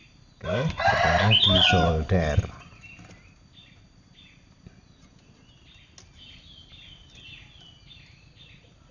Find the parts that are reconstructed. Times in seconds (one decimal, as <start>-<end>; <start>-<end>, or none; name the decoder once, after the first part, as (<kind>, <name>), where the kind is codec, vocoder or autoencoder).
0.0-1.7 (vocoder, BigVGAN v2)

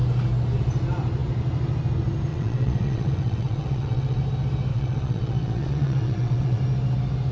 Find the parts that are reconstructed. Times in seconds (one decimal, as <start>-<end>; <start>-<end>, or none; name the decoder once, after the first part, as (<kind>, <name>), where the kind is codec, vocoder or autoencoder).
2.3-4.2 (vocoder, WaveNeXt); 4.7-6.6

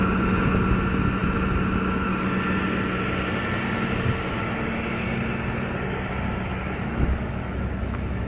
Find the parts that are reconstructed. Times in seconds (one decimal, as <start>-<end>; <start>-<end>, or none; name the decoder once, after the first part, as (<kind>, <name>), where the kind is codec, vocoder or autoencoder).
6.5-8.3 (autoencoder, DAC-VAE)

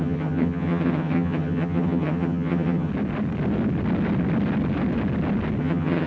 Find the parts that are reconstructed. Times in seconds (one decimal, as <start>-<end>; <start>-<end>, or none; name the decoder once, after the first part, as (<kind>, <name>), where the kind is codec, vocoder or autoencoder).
0.0-2.9 (vocoder, HiFi-GAN); 5.6-6.1

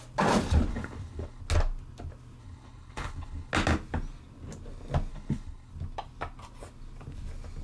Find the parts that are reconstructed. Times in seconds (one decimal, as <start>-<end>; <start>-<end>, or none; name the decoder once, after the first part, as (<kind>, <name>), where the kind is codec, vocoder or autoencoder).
0.7-1.4 (codec, HILCodec); 2.4-3.5; 5.1-5.7